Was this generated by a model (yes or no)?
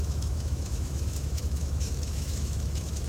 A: yes